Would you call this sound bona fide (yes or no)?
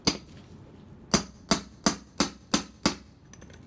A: yes